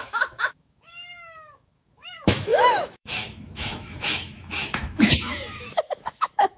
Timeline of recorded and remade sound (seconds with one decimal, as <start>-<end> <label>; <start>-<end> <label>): 0.0-6.6 remade